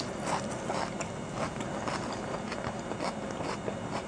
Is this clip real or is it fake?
real